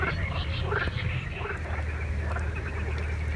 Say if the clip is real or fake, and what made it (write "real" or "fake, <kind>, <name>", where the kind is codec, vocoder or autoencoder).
real